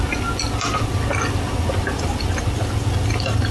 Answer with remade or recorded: recorded